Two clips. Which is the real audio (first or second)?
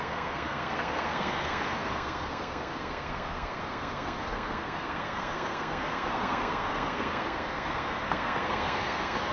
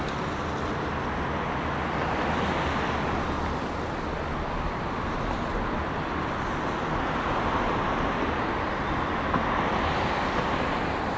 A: second